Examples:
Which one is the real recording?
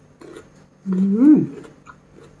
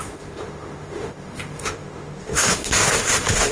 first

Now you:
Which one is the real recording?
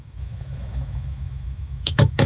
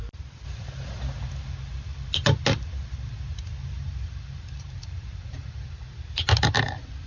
second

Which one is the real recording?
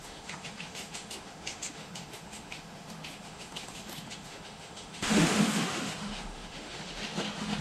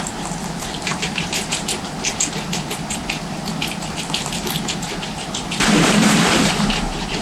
second